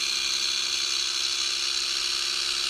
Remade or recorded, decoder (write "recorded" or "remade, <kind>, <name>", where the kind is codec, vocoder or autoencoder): recorded